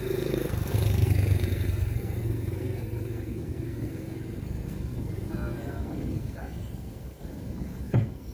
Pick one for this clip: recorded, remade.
remade